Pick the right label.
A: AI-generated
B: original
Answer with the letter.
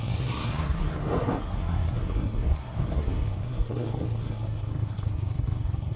A